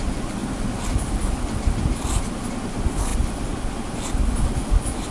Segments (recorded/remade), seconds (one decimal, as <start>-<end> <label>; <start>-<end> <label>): 0.0-5.1 recorded